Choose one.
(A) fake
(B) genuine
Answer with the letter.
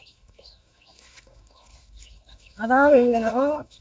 A